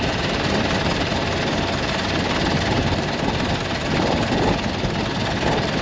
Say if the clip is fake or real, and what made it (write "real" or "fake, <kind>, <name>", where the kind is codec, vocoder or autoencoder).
real